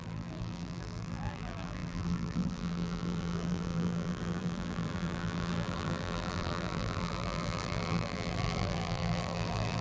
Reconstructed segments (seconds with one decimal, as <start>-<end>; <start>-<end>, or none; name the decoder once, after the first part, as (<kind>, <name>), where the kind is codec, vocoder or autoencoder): 0.0-9.8 (vocoder, BigVGAN v2)